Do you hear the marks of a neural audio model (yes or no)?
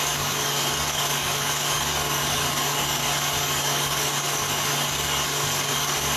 yes